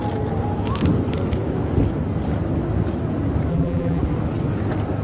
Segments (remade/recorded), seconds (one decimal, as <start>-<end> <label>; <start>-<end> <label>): 0.0-3.5 recorded; 3.5-4.0 remade; 4.0-5.0 recorded